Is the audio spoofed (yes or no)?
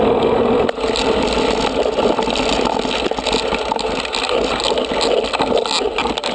no